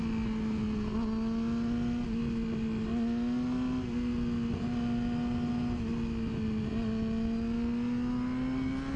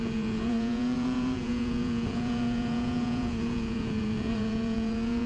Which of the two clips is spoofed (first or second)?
second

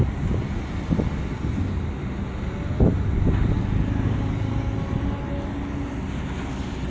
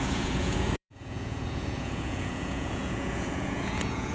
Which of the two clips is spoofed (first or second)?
second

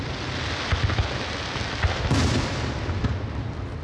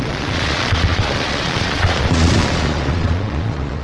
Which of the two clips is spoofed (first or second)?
second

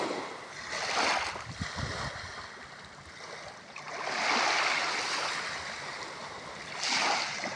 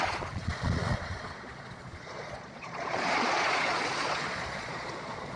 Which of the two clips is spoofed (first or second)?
second